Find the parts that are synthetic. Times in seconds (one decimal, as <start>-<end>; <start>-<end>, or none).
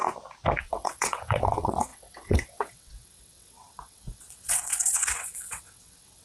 0.6-6.2